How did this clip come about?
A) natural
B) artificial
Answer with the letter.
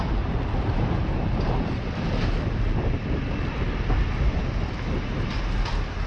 A